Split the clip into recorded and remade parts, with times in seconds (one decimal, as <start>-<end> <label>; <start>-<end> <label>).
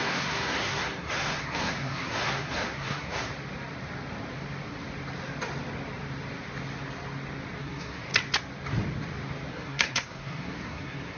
0.0-3.3 remade; 3.3-7.6 recorded; 7.6-8.1 remade; 8.1-9.5 recorded; 9.5-11.2 remade